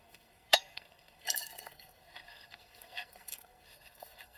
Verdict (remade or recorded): remade